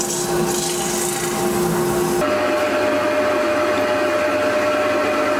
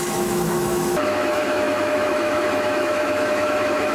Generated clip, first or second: second